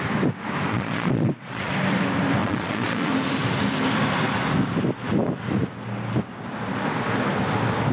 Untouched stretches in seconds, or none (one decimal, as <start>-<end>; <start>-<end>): 0.0-0.7; 1.7-2.4; 3.1-7.9